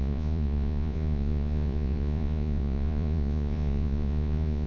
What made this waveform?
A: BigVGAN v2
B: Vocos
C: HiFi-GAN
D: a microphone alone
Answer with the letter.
B